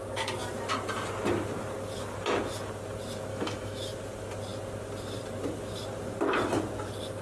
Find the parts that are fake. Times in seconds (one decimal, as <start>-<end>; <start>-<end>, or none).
3.3-3.8